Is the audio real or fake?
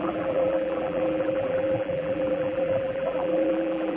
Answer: fake